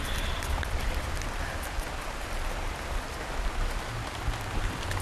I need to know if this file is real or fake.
real